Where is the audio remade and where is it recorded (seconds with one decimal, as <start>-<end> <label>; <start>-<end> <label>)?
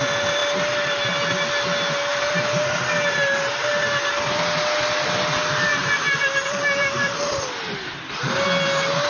0.0-2.1 recorded; 2.1-3.7 remade; 3.7-5.7 recorded; 5.7-7.9 remade; 7.9-9.1 recorded